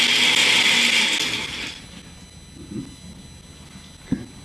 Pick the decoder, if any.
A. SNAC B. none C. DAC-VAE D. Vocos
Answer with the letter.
B